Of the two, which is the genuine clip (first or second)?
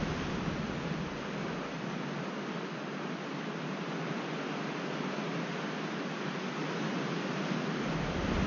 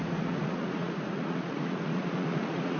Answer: first